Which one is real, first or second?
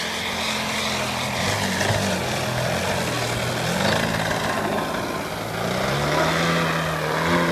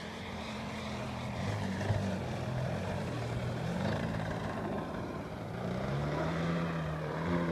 first